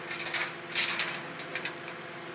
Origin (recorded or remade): recorded